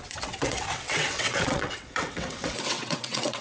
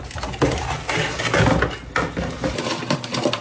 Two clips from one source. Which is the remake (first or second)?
first